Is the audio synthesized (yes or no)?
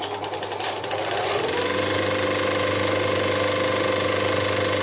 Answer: no